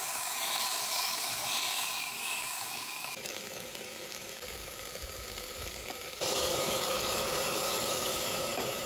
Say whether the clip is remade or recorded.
remade